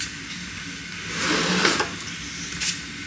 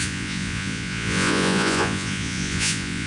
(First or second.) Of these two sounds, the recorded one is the first